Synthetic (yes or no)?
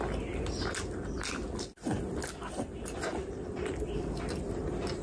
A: no